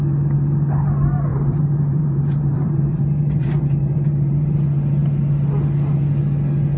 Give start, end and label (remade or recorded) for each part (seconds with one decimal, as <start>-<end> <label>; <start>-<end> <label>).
0.0-1.3 recorded; 1.3-4.6 remade; 4.6-6.8 recorded

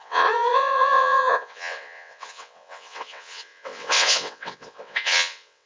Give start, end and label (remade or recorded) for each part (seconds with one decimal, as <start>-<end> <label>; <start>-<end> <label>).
0.0-5.7 remade